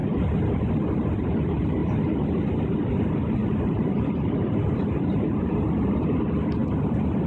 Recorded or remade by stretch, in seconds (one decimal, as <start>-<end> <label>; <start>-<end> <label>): 0.0-3.4 recorded; 3.4-5.6 remade; 5.6-7.3 recorded